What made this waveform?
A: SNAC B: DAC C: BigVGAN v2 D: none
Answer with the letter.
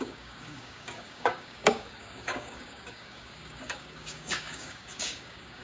B